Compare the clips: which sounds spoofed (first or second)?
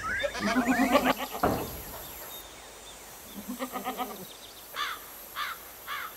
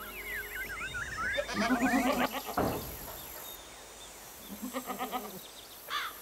first